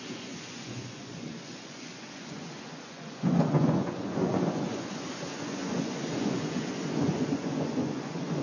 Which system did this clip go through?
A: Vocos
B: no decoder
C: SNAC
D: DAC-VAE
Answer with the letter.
A